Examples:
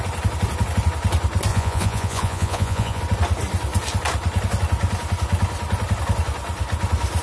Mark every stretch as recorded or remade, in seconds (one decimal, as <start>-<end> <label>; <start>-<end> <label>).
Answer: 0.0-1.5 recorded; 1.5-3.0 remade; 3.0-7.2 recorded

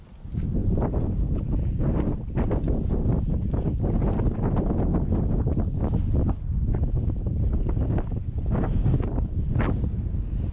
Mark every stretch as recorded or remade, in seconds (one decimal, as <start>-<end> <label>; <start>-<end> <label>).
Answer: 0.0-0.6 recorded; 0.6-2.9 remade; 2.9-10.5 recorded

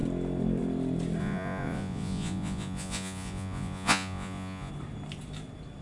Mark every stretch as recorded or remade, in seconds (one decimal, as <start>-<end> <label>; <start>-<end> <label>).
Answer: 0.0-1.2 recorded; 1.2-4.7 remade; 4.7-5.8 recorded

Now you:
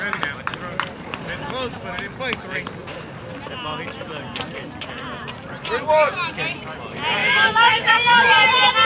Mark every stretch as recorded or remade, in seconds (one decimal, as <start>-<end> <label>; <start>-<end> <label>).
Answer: 0.0-7.2 recorded; 7.2-8.1 remade; 8.1-8.8 recorded